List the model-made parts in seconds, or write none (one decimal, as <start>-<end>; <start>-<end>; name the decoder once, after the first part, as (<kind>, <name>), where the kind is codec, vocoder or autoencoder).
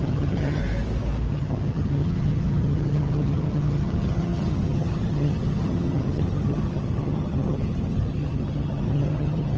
0.0-0.6 (vocoder, HiFi-GAN); 1.3-9.6